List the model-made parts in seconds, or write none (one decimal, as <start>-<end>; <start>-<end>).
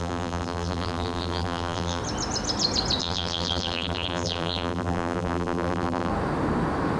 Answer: 0.0-2.0; 3.0-6.1